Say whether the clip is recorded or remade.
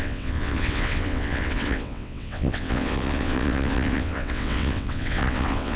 remade